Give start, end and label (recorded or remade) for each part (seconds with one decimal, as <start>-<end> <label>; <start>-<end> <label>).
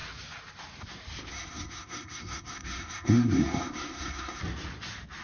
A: 0.0-1.3 recorded; 1.3-4.4 remade; 4.4-5.2 recorded